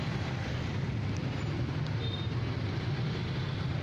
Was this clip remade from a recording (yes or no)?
no